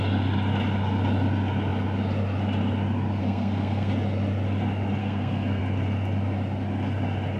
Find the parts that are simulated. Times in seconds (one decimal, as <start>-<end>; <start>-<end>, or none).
3.2-3.9; 5.0-5.6